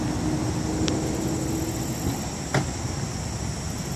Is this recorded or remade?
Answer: recorded